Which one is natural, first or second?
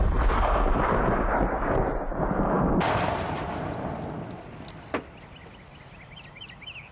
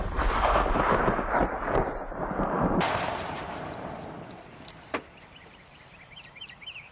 first